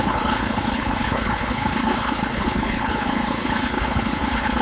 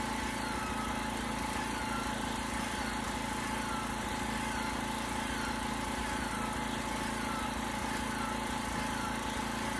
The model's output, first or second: first